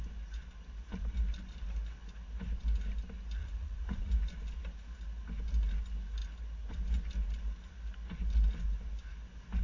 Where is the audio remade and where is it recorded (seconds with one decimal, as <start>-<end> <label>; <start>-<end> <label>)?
0.0-3.4 recorded; 3.4-4.1 remade; 4.1-9.6 recorded